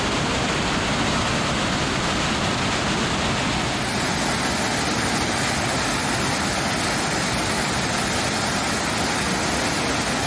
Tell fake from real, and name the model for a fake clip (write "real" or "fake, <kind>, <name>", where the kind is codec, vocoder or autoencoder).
real